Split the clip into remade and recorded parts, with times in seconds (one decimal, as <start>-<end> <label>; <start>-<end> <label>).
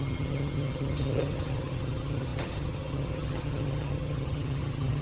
0.0-5.0 remade